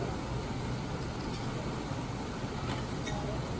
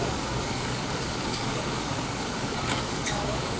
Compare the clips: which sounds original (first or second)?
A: first